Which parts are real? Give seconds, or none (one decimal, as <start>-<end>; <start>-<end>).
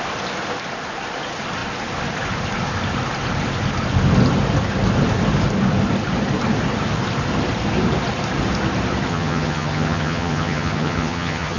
0.0-9.1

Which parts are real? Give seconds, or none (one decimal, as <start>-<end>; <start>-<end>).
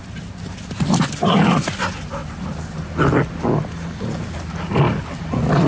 0.0-5.7